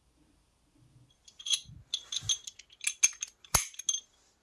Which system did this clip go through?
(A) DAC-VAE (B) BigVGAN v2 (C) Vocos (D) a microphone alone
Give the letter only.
D